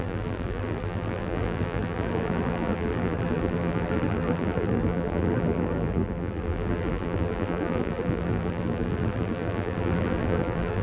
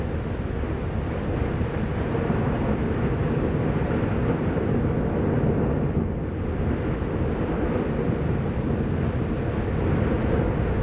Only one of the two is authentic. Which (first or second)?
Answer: second